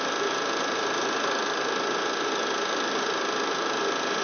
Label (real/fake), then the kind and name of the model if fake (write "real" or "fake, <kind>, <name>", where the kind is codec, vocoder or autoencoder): real